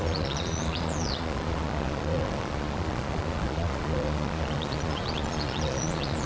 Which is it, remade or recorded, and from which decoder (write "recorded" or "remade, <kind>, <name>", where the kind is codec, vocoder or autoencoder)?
remade, vocoder, Vocos